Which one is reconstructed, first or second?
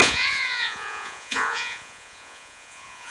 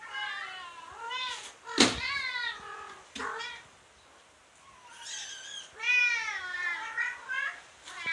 first